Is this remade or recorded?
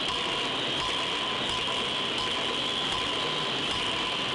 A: recorded